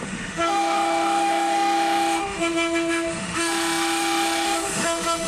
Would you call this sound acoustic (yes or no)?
no